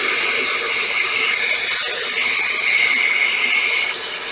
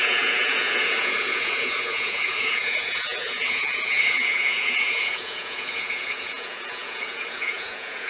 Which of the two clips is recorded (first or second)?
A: first